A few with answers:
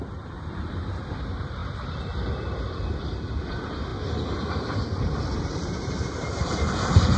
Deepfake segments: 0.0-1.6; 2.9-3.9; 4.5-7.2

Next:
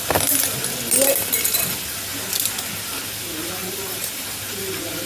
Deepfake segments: 3.6-4.4